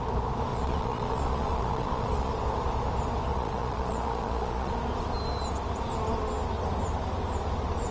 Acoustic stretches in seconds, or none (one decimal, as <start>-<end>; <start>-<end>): 0.0-0.5; 2.3-3.3; 4.8-7.9